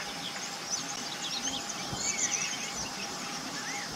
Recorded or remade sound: recorded